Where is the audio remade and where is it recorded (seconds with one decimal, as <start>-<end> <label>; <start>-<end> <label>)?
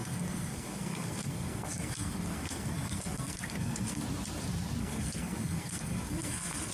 0.0-4.0 remade; 4.0-4.8 recorded; 4.8-6.7 remade